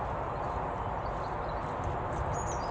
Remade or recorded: recorded